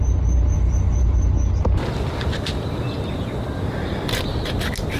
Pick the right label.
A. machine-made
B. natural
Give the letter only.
B